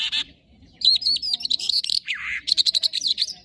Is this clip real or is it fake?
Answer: fake